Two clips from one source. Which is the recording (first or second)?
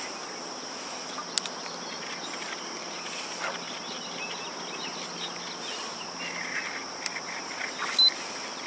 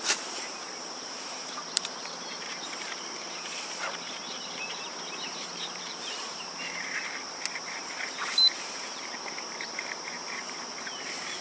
first